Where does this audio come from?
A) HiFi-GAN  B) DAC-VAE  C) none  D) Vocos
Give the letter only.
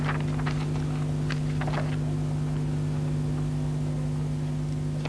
C